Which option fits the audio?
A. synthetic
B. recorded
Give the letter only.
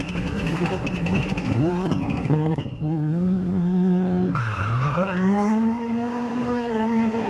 A